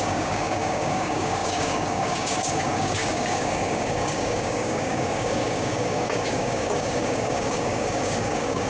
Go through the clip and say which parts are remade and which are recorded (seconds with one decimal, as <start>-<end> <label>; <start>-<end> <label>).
0.0-8.7 remade